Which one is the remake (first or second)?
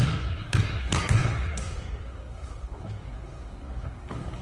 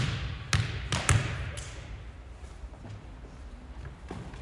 first